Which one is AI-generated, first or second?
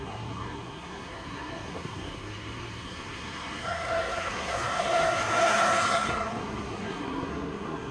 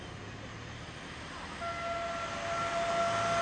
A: first